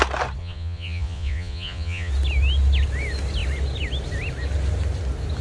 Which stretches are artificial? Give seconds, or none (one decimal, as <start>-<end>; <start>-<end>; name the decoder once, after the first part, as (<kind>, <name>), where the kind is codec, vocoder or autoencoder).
0.4-2.1 (vocoder, Vocos)